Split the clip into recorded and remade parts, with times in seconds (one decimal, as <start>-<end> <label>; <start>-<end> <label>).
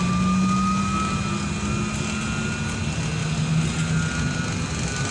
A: 0.0-5.1 recorded